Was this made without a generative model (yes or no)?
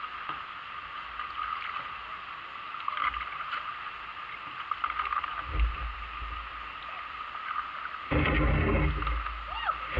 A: yes